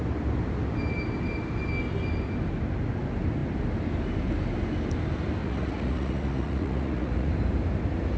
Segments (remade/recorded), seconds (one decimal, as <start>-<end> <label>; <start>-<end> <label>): 0.0-5.4 recorded; 5.4-7.3 remade; 7.3-8.2 recorded